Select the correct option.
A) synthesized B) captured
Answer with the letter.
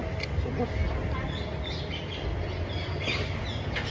B